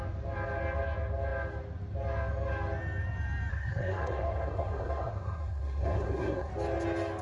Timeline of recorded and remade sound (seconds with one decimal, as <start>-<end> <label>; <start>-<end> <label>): 0.0-3.5 recorded; 3.5-6.5 remade; 6.5-7.2 recorded